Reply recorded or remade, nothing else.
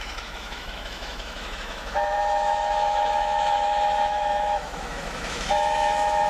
remade